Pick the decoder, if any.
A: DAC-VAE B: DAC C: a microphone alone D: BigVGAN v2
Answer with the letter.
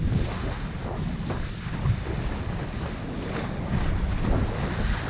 C